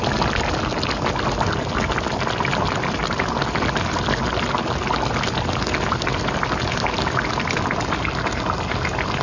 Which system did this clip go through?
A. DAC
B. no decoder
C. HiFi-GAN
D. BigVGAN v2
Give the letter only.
B